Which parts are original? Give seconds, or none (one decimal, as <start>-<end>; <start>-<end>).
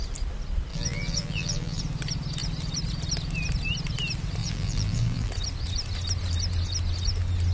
0.0-0.7; 1.8-4.4; 5.3-7.5